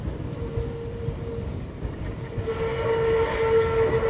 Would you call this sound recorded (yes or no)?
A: yes